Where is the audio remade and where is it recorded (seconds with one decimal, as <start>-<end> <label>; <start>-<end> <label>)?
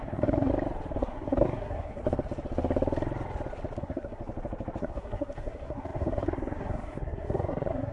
0.0-0.5 remade; 0.5-1.0 recorded; 1.0-2.0 remade; 2.0-3.8 recorded; 3.8-4.2 remade; 4.2-4.8 recorded; 4.8-7.9 remade